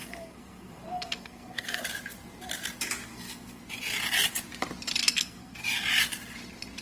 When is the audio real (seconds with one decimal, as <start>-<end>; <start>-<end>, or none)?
1.8-3.1; 3.6-5.0; 5.6-6.8

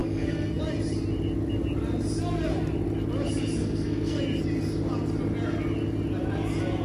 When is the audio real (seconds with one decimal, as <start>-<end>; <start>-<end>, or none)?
0.6-3.6; 4.2-6.8

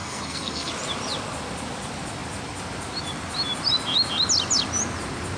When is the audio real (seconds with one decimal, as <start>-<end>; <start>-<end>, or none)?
0.7-5.4

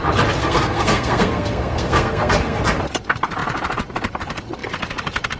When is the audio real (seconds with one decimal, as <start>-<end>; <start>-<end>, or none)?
0.0-0.4; 2.6-5.4

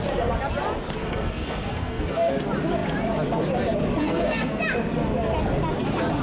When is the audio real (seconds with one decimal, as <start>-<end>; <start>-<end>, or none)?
0.0-1.0; 2.3-4.0; 4.6-6.2

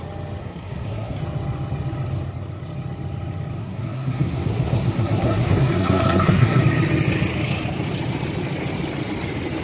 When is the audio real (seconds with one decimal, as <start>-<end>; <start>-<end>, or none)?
0.0-0.4; 1.2-3.6; 6.6-9.6